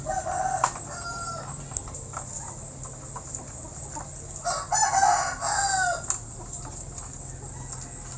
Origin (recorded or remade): recorded